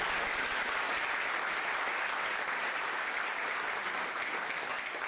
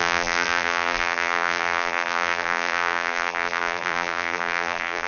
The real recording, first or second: first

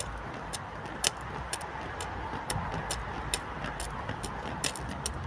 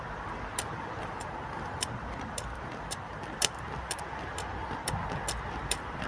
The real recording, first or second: first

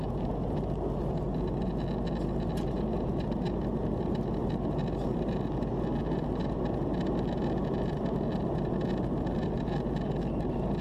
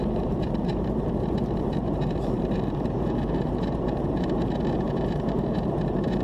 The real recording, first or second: first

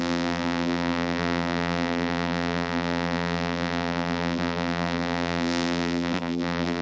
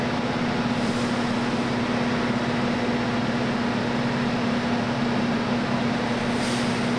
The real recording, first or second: second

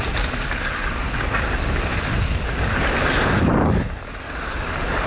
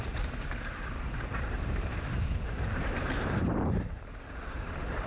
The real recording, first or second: first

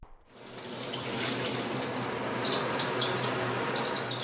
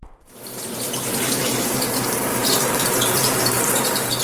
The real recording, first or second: first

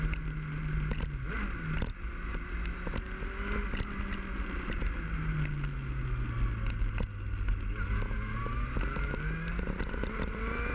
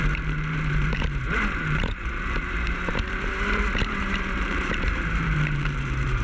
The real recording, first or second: first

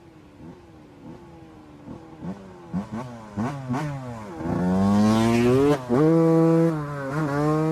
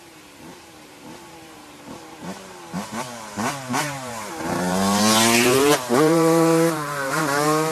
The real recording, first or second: first